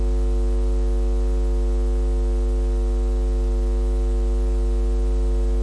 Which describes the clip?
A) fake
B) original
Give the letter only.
B